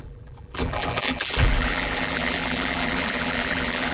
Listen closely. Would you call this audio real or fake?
fake